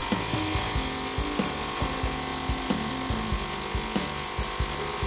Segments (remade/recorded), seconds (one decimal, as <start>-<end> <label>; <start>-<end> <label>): 0.0-5.1 recorded